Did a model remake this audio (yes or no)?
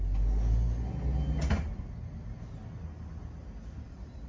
no